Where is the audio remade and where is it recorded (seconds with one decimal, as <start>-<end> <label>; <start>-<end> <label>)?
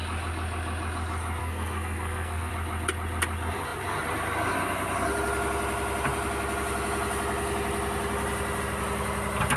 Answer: 0.0-1.4 recorded; 1.4-2.5 remade; 2.5-9.6 recorded